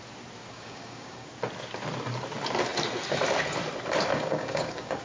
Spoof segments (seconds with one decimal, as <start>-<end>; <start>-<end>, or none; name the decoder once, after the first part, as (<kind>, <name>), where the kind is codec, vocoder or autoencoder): 0.4-1.3 (codec, DAC); 4.1-5.0